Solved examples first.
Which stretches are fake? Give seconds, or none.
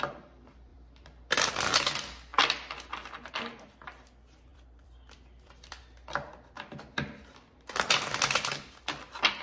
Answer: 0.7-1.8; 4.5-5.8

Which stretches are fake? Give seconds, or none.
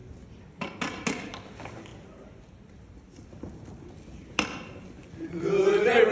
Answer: none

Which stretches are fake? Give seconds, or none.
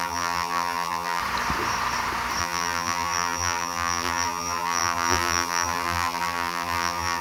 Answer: 0.0-1.2; 2.4-7.2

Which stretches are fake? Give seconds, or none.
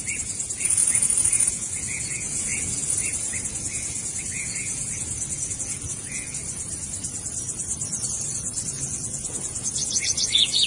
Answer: 0.0-6.4; 8.1-10.7